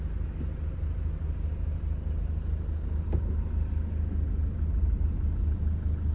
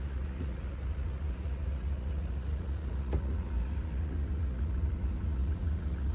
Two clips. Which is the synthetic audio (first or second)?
second